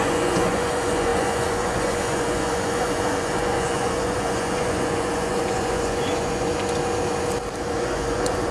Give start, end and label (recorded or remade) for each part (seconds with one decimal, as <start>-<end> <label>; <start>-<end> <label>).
0.0-6.5 remade; 6.5-7.7 recorded; 7.7-8.5 remade